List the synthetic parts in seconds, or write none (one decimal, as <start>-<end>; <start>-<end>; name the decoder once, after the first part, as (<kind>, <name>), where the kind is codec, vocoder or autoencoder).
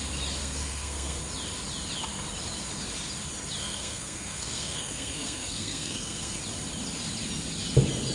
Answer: 0.4-1.2 (codec, SNAC); 3.6-6.4